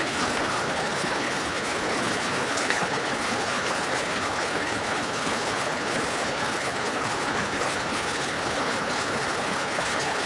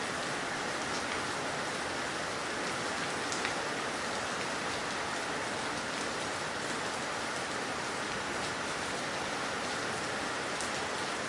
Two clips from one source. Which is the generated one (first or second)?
first